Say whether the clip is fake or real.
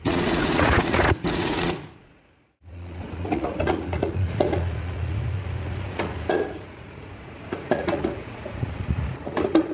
fake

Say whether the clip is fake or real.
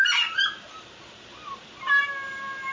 real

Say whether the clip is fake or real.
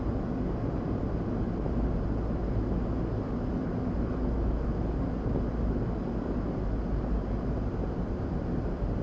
real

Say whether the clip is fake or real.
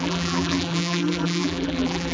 fake